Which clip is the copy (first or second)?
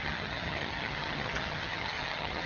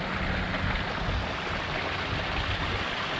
first